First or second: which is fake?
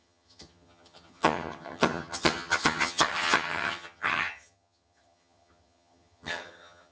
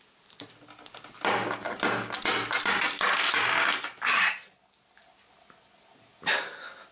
first